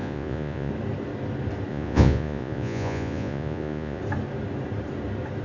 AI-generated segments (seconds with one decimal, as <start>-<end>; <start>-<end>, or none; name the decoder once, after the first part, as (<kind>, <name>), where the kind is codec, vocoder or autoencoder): 0.0-0.7 (vocoder, Vocos); 1.7-4.0